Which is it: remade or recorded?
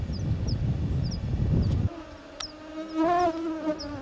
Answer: recorded